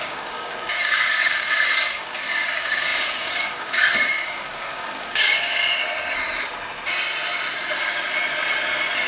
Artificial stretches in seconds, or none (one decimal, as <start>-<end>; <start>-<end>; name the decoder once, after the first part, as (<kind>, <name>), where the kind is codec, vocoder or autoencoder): 0.0-5.6 (codec, DAC)